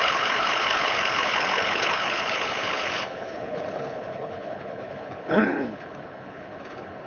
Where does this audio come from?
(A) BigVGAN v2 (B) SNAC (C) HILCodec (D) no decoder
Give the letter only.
C